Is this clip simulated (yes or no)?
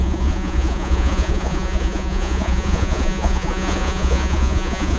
yes